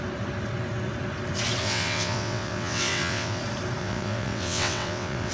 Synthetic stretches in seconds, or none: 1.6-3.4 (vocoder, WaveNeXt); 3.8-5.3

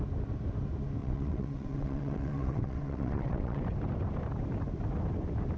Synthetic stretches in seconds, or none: 1.0-3.6 (vocoder, WaveNeXt)

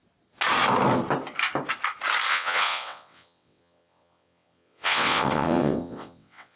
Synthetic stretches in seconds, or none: 2.3-6.6 (vocoder, WaveNeXt)

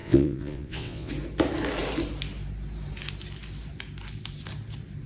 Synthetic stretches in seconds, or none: 0.0-1.1 (vocoder, WaveNeXt)

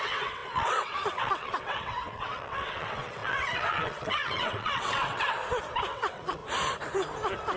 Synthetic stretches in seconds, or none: 0.0-5.4 (vocoder, WaveNeXt); 5.9-6.4

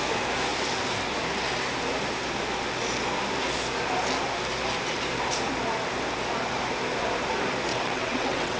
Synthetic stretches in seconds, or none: 7.7-8.6 (vocoder, WaveNeXt)